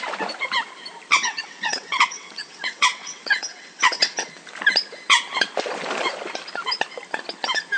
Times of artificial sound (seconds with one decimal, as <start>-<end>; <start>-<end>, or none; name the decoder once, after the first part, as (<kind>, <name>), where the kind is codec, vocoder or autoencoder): 1.1-4.3 (vocoder, WaveNeXt)